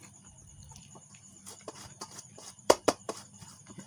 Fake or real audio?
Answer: fake